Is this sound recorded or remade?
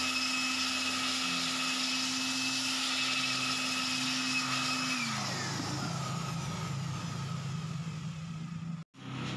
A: recorded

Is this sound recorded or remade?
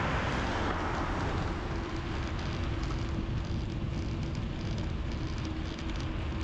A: recorded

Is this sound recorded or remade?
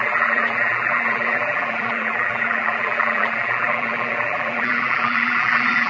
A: remade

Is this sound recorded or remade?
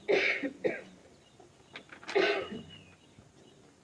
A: recorded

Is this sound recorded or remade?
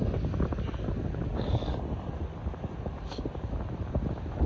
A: recorded